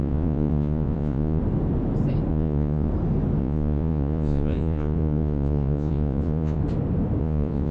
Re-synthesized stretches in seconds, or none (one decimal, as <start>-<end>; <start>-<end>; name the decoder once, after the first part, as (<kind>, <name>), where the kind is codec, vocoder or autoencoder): 0.0-1.4 (vocoder, Vocos); 2.3-2.9; 3.4-6.6; 7.2-7.7